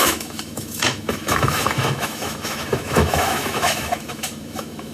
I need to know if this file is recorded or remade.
remade